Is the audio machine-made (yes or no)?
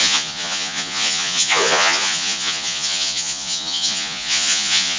yes